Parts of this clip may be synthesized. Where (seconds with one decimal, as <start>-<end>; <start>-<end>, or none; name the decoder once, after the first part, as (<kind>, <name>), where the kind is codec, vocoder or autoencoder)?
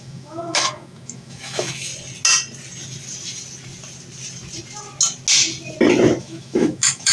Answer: 0.0-1.9 (autoencoder, DAC-VAE); 6.2-7.1